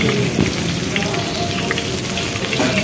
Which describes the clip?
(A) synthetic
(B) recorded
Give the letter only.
B